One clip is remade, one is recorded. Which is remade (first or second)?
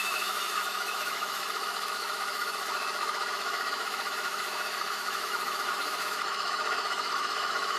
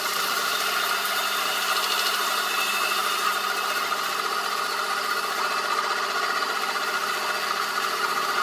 first